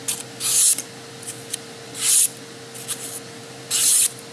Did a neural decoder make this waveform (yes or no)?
no